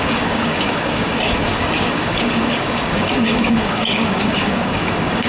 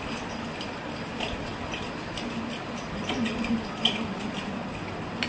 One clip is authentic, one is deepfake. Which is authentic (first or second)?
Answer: second